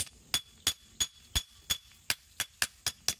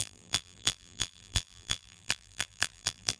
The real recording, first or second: first